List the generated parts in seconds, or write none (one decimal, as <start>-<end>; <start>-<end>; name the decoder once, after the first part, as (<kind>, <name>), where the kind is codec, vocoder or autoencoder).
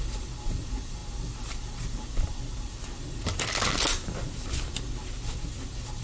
none